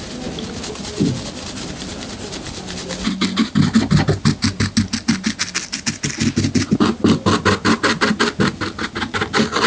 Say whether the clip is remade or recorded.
recorded